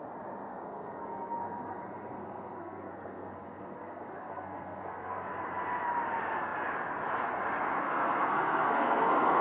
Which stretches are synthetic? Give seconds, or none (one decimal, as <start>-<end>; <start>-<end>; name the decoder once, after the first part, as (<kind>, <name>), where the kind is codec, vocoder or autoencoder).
0.5-5.3 (codec, SNAC); 7.8-9.4